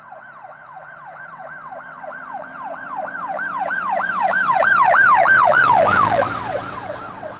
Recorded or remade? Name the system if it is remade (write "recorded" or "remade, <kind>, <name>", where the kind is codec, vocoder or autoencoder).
remade, vocoder, WaveNeXt